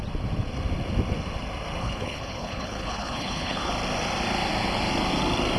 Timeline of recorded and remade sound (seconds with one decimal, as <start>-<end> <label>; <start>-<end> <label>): 0.0-1.8 recorded; 1.8-3.7 remade; 3.7-5.6 recorded